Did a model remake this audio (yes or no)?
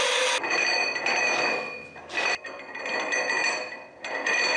no